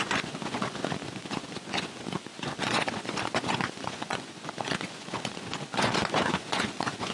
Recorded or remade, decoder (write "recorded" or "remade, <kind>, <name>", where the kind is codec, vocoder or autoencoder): remade, vocoder, Vocos